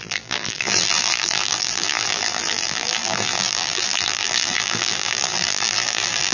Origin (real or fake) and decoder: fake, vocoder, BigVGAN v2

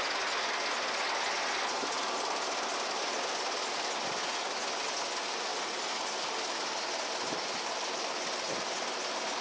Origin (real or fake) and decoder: real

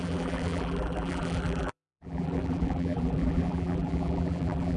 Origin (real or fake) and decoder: fake, vocoder, BigVGAN v2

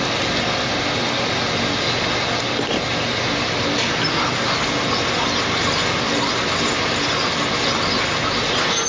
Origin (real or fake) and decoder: real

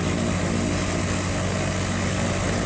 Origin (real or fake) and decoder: real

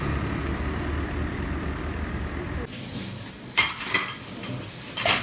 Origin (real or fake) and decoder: real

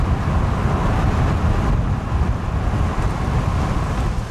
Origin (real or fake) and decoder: real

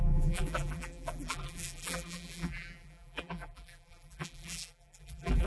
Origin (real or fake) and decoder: fake, vocoder, BigVGAN v2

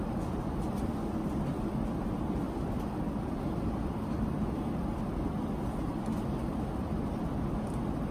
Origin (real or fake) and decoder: real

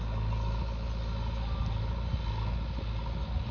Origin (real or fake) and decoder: real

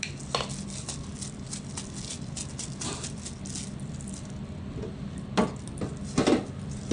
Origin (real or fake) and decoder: real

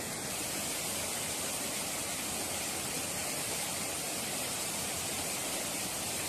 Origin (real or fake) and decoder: real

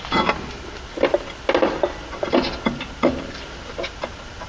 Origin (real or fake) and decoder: real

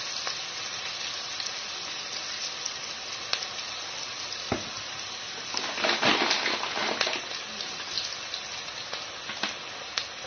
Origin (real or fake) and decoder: real